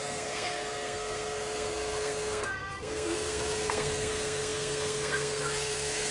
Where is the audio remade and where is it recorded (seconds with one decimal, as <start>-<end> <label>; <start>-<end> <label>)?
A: 0.0-6.1 remade